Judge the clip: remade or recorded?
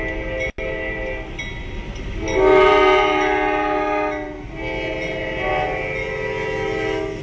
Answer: recorded